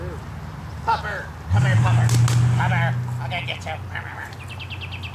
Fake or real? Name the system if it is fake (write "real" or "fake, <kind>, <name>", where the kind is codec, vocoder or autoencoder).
real